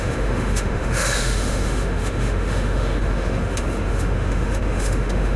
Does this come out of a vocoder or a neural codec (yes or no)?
yes